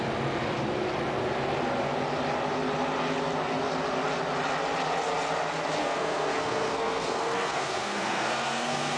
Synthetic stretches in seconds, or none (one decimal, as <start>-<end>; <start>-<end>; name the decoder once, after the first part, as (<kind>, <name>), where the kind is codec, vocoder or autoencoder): 5.8-9.0 (codec, SNAC)